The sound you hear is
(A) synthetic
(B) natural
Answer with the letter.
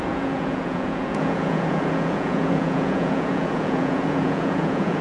A